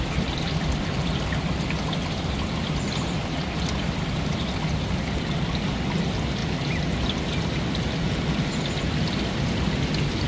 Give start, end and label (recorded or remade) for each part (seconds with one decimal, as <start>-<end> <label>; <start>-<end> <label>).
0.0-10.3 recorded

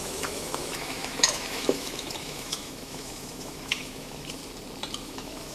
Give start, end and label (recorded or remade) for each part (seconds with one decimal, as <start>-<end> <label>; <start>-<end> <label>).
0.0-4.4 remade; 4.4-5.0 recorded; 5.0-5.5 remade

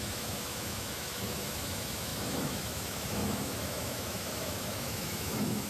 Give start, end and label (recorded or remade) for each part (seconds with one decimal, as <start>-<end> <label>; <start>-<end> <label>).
0.0-5.7 remade

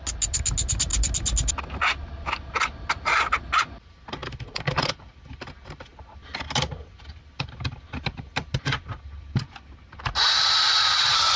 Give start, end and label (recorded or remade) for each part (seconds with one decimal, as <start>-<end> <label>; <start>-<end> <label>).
0.0-11.4 recorded

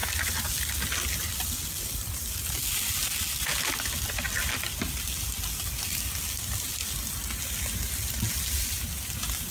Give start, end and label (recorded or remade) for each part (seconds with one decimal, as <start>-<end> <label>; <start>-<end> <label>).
0.0-9.5 recorded